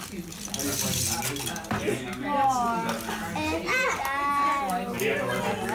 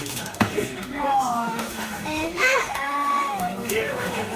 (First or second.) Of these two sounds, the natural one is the first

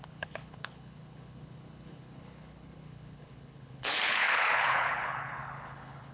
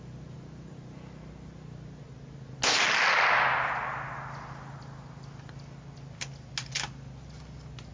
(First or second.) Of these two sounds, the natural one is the second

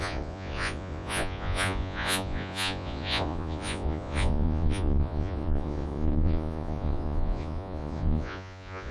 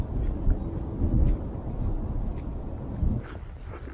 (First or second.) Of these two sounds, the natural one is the second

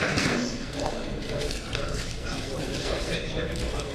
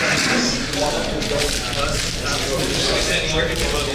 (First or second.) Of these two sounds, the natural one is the second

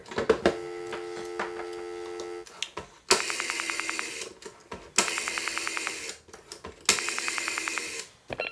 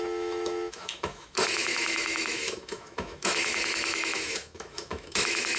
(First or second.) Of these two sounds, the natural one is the first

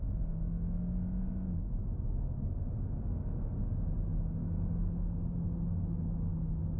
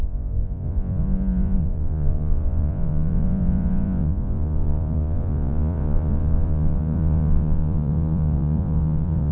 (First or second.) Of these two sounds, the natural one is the first